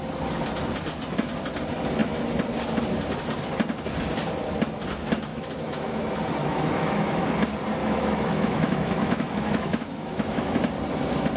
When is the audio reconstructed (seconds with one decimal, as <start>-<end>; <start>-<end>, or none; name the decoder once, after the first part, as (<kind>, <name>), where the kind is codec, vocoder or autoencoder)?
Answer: 5.3-5.9 (autoencoder, DAC-VAE); 6.4-7.2; 7.8-10.7